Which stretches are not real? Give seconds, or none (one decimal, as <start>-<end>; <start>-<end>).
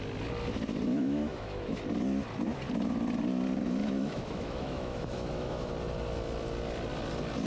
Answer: 0.9-1.8; 3.8-5.7